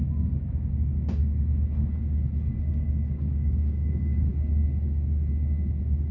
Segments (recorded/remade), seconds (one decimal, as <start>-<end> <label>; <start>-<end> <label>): 0.0-1.2 remade; 1.2-2.6 recorded; 2.6-4.3 remade; 4.3-6.1 recorded